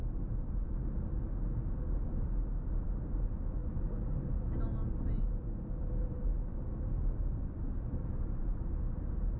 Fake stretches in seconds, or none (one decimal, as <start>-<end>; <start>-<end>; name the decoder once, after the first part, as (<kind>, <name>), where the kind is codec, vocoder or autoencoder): none